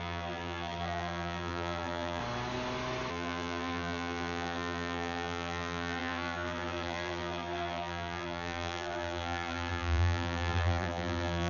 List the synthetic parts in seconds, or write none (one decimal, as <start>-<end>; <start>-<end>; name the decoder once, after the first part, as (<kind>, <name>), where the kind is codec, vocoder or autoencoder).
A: 0.0-2.2 (vocoder, BigVGAN v2); 3.1-11.5